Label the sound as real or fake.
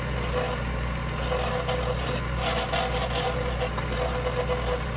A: real